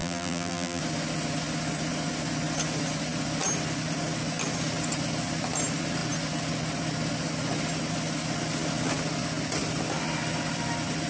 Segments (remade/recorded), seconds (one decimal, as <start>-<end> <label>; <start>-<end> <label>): 0.0-0.8 remade; 0.8-11.1 recorded